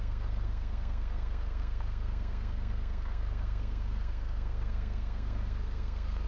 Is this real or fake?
fake